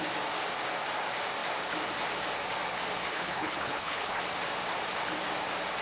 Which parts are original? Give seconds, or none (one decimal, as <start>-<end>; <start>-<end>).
0.0-3.1; 4.2-5.8